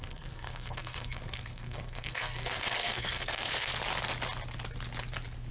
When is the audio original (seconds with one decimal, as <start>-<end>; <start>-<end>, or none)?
3.7-5.5